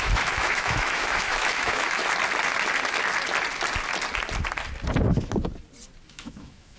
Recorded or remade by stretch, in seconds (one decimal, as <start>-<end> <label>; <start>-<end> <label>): 0.0-2.0 remade; 2.0-6.1 recorded; 6.1-6.8 remade

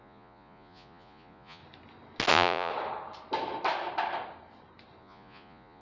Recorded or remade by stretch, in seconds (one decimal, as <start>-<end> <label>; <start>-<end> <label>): 0.0-1.6 remade; 1.6-2.3 recorded; 2.3-2.7 remade; 2.7-5.0 recorded; 5.0-5.8 remade

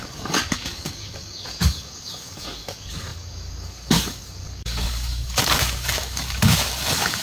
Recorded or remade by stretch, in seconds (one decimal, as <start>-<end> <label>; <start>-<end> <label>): 0.0-7.2 remade

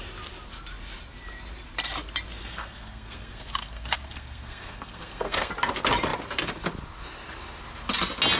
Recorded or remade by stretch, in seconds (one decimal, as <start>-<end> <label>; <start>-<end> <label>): 0.0-2.4 recorded; 2.4-5.5 remade; 5.5-8.4 recorded

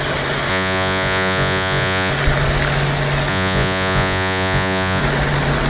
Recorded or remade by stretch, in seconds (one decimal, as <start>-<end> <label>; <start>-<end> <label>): 0.0-0.5 recorded; 0.5-2.1 remade; 2.1-3.3 recorded; 3.3-5.0 remade; 5.0-5.7 recorded

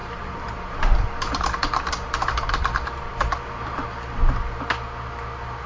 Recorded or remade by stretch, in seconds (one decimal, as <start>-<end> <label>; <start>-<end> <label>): 0.0-3.4 remade; 3.4-5.7 recorded